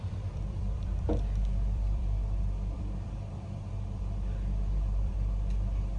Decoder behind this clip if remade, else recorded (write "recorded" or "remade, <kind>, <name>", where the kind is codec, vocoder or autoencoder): remade, vocoder, BigVGAN v2